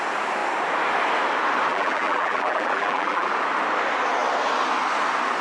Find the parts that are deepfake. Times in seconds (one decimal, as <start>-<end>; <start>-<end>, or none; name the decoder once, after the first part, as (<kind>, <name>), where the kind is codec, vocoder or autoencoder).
1.7-3.3 (vocoder, BigVGAN v2)